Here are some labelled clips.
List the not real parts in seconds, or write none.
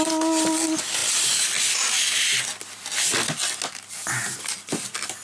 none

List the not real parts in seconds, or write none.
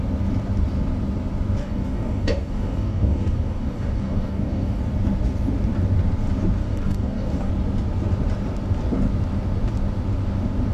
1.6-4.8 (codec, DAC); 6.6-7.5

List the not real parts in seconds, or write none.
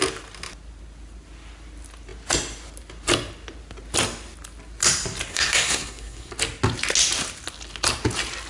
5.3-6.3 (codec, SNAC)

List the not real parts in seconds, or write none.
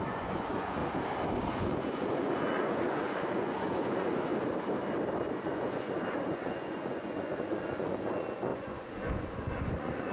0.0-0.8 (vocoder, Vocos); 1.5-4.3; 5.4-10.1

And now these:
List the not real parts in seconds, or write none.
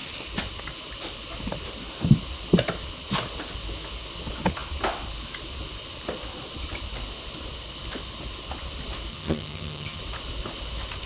9.1-10.0 (vocoder, HiFi-GAN)